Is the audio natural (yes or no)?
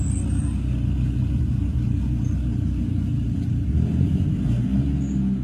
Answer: yes